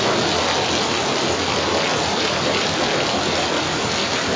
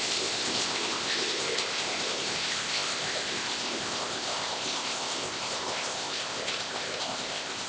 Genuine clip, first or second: first